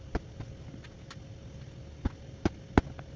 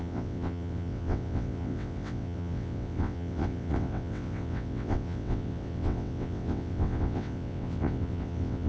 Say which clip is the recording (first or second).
first